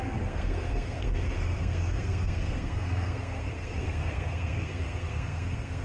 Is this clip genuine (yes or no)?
no